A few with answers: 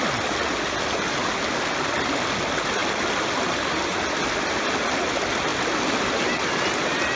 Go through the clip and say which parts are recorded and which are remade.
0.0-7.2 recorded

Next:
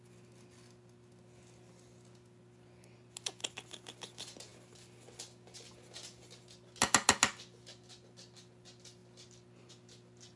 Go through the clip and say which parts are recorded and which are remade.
0.0-10.4 recorded

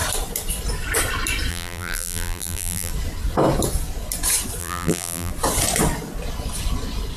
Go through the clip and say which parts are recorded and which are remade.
0.0-1.5 recorded; 1.5-2.9 remade; 2.9-4.6 recorded; 4.6-5.3 remade; 5.3-7.2 recorded

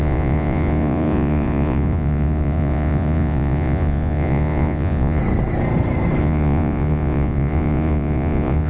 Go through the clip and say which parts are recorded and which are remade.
0.0-5.2 remade; 5.2-6.2 recorded; 6.2-8.7 remade